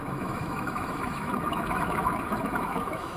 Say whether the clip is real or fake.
fake